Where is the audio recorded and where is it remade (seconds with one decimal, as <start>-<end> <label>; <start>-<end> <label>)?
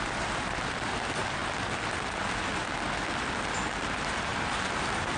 0.0-1.4 remade; 1.4-2.1 recorded; 2.1-2.6 remade; 2.6-3.7 recorded; 3.7-5.2 remade